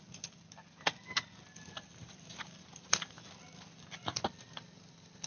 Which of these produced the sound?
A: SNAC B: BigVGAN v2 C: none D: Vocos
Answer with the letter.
C